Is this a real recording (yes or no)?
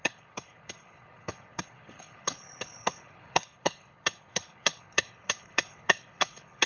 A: no